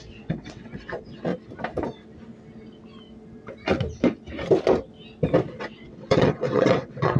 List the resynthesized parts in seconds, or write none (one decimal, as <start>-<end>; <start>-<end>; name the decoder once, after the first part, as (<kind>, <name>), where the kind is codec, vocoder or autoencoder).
0.0-1.3 (vocoder, WaveNeXt); 5.6-7.2